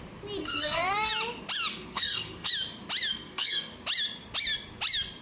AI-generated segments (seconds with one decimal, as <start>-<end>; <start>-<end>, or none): 0.4-1.1; 1.7-2.5; 3.1-3.7